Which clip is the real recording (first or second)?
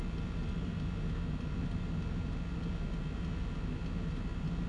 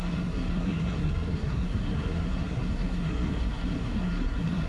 first